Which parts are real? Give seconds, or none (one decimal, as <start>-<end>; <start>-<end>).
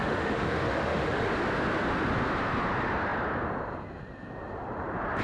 1.2-5.2